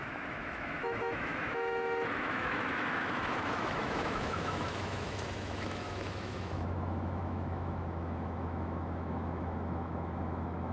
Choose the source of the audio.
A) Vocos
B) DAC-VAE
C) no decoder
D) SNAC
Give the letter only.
B